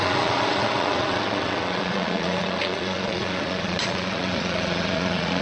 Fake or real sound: fake